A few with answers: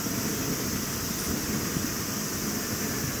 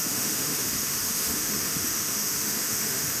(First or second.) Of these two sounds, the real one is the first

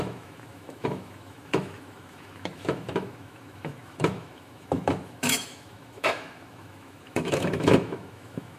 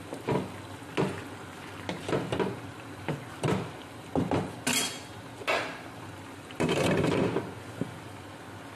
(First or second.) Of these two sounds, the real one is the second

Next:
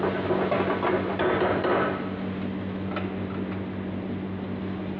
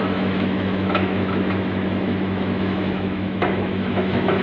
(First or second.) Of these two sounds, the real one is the first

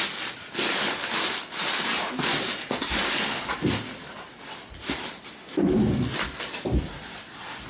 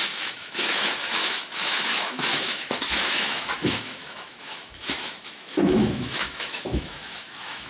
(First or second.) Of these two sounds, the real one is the first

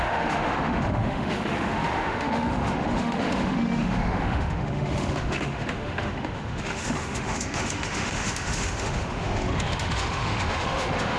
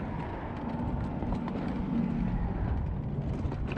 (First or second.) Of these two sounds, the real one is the second